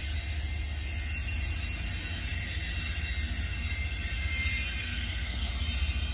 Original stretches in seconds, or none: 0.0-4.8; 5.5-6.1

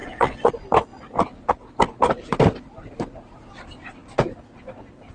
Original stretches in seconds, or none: 0.5-5.1